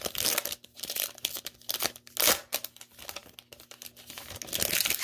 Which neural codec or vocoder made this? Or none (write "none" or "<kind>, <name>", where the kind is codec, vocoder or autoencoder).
none